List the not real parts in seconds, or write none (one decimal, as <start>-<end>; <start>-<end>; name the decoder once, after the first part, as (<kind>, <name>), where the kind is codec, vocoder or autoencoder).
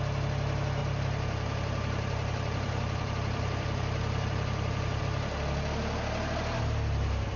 0.8-5.0 (vocoder, BigVGAN v2)